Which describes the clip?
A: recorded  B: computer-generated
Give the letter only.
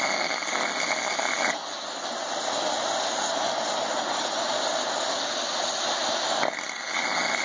A